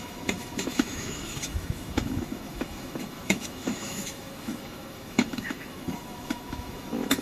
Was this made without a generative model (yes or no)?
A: no